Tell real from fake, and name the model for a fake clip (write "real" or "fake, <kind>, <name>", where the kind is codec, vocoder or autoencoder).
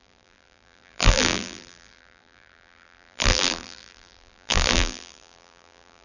fake, vocoder, BigVGAN v2